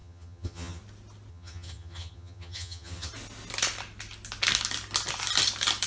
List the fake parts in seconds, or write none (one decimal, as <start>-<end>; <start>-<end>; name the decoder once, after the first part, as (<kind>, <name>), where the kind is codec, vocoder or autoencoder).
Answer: 0.0-0.8 (vocoder, HiFi-GAN); 1.3-3.1

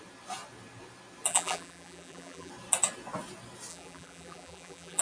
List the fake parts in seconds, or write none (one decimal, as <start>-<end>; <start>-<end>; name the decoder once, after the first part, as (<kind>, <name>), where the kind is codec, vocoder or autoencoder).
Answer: 1.3-2.5 (vocoder, BigVGAN v2); 3.7-5.0

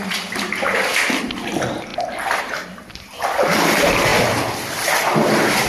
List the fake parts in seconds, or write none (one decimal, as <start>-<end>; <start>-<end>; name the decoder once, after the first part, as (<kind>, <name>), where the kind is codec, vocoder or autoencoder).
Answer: none

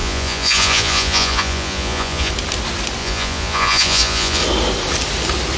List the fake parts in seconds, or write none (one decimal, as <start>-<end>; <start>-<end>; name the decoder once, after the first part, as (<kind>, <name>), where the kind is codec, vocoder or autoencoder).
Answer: 0.0-2.3 (vocoder, Vocos); 3.0-4.4